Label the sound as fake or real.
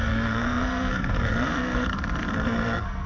fake